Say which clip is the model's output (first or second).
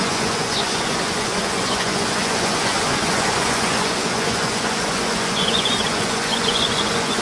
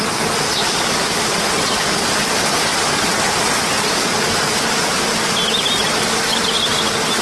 first